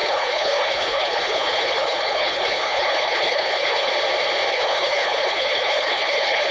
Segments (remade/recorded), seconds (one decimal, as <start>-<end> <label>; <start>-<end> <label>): 0.0-3.9 remade; 3.9-4.5 recorded; 4.5-6.5 remade